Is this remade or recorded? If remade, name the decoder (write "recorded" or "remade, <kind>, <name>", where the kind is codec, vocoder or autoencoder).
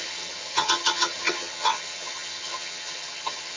remade, vocoder, HiFi-GAN